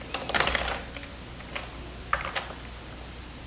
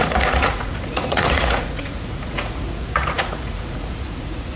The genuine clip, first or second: first